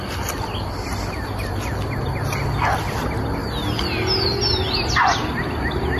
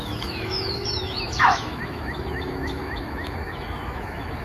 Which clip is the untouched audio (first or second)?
first